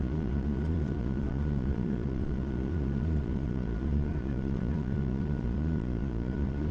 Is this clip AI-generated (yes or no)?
yes